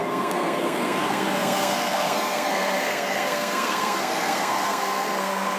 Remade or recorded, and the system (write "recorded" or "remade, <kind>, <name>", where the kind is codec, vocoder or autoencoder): remade, codec, SNAC